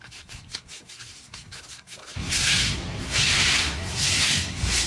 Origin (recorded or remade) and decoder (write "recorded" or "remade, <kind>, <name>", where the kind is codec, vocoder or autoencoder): remade, codec, SNAC